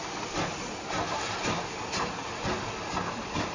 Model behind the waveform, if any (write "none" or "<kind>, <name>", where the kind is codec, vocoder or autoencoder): none